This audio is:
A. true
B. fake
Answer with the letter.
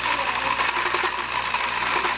A